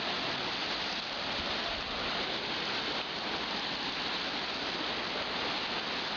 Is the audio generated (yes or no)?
no